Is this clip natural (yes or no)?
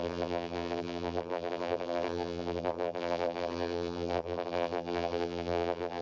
no